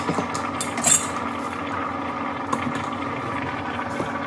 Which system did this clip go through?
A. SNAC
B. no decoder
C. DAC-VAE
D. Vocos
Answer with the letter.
B